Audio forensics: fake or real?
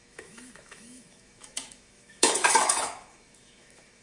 fake